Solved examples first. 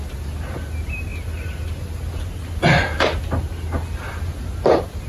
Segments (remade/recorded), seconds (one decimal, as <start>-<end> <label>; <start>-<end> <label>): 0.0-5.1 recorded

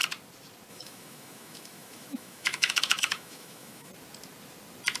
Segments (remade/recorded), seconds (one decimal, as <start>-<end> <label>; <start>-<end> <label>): 0.0-0.7 recorded; 0.7-3.9 remade; 3.9-5.0 recorded

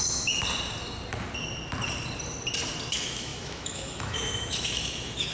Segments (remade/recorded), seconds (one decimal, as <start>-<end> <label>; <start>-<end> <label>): 0.0-0.4 remade; 0.4-2.9 recorded; 2.9-5.3 remade

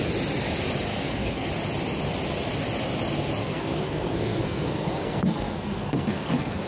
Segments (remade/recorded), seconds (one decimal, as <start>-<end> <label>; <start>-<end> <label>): 0.0-0.9 recorded; 0.9-1.5 remade; 1.5-3.4 recorded; 3.4-6.7 remade

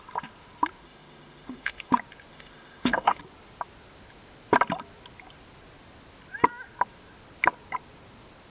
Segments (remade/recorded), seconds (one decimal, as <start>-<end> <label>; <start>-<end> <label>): 0.0-0.8 recorded; 0.8-1.9 remade; 1.9-2.3 recorded; 2.3-3.2 remade; 3.2-8.5 recorded

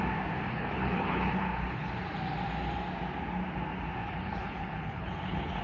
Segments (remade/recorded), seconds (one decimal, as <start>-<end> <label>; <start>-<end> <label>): 0.0-0.5 recorded; 0.5-1.9 remade; 1.9-4.0 recorded; 4.0-5.6 remade

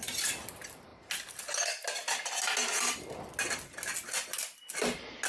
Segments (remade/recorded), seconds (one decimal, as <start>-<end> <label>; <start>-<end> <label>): 0.0-5.3 recorded

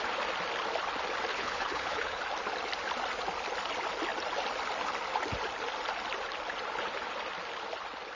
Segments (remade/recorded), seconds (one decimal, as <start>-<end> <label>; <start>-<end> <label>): 0.0-1.3 recorded; 1.3-2.2 remade; 2.2-8.2 recorded